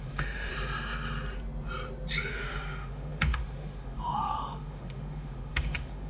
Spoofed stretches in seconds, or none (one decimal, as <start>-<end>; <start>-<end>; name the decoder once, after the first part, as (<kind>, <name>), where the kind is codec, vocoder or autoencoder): 0.0-0.5 (autoencoder, DAC-VAE); 2.3-6.1